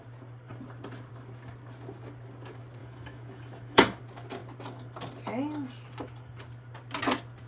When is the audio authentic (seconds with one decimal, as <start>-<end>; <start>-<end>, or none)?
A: 0.0-2.8; 4.0-7.5